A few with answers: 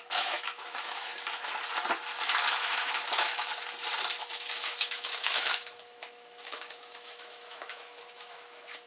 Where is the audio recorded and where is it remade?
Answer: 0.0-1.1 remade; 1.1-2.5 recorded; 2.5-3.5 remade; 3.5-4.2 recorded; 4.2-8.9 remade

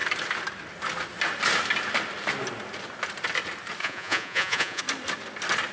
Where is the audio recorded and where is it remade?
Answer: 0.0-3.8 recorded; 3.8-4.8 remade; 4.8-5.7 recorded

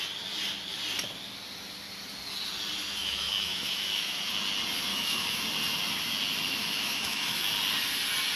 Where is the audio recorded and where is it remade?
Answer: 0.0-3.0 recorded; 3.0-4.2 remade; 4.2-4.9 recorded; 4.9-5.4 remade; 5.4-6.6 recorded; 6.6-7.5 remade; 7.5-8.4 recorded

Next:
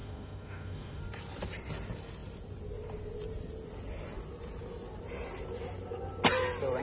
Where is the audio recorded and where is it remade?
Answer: 0.0-1.0 remade; 1.0-6.8 recorded